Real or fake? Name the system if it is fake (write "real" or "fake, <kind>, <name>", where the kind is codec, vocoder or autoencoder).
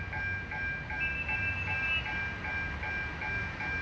real